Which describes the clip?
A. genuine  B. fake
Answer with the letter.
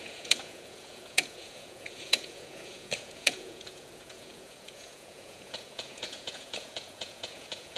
B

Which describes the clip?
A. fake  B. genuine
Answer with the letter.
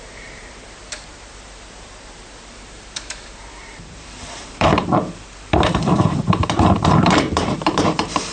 A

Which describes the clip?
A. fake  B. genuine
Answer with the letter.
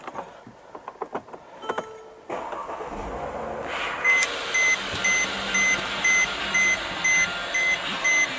B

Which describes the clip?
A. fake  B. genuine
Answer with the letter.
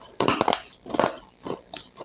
B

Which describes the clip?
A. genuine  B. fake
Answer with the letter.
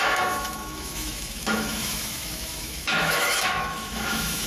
B